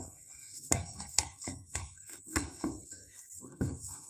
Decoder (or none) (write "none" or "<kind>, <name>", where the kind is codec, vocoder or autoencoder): codec, SNAC